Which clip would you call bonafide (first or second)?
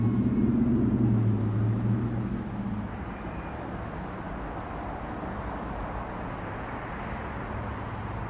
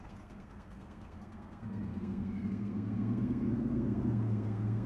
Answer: first